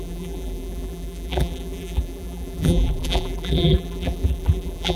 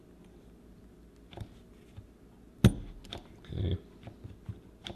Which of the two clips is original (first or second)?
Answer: second